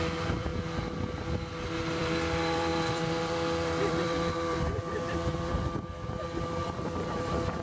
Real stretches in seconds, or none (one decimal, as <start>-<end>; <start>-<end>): 0.5-1.9